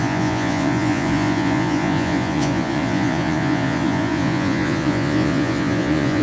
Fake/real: fake